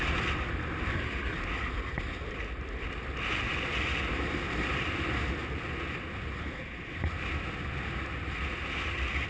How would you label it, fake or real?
real